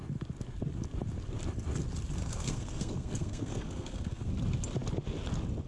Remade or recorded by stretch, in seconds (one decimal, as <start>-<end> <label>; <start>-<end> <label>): 0.0-2.2 recorded; 2.2-4.3 remade; 4.3-5.7 recorded